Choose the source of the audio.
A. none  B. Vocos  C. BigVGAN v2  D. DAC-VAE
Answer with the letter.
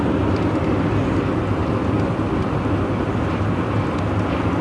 A